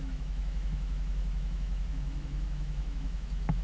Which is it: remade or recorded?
remade